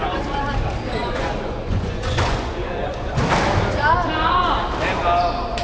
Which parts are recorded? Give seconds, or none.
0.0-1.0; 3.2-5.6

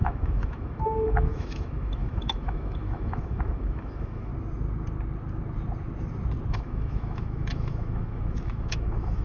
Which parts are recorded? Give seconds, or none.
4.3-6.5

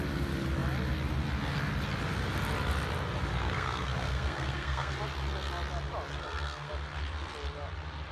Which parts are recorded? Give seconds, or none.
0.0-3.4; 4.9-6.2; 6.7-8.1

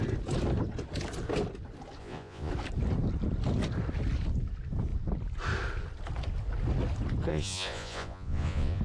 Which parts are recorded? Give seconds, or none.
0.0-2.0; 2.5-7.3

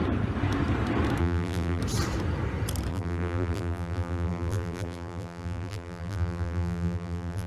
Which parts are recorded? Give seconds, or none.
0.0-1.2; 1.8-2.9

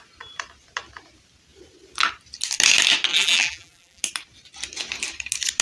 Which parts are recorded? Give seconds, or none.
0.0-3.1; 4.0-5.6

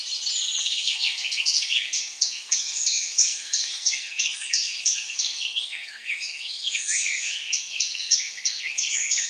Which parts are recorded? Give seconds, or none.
0.0-0.6

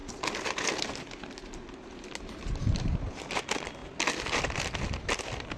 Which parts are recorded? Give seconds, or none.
0.0-5.6